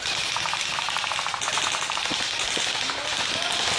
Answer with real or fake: real